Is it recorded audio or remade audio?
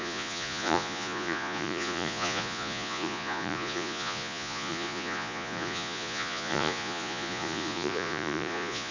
remade